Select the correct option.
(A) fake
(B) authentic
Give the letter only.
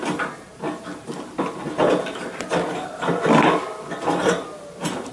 B